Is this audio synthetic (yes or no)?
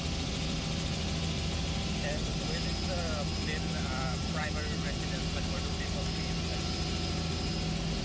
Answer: no